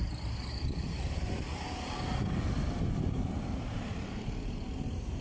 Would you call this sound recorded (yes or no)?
no